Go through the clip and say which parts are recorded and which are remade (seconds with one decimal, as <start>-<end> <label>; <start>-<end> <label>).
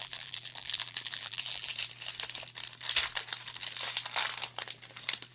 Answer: 0.0-1.7 remade; 1.7-5.3 recorded